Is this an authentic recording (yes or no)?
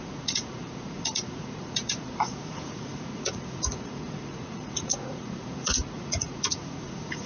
no